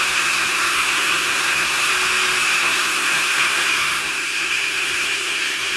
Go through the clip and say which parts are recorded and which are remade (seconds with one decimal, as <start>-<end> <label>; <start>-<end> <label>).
0.0-1.9 remade; 1.9-2.4 recorded; 2.4-5.8 remade